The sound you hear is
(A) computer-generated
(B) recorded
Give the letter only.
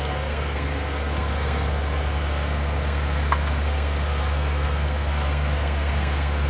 A